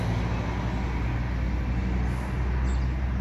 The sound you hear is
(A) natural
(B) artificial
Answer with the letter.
A